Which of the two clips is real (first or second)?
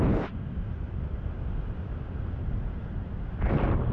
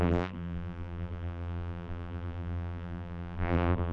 first